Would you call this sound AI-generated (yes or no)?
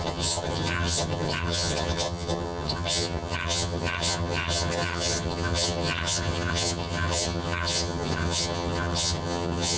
yes